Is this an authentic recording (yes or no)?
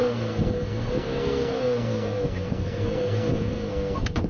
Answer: no